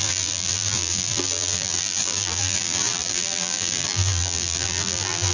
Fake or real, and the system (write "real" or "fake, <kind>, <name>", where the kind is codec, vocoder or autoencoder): fake, vocoder, BigVGAN v2